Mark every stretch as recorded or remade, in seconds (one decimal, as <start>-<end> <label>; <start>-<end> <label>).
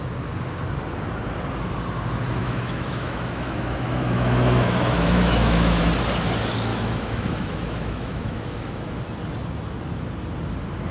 0.0-2.4 recorded; 2.4-5.8 remade; 5.8-6.7 recorded; 6.7-9.0 remade; 9.0-10.9 recorded